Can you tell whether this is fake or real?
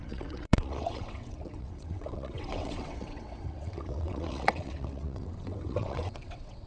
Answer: fake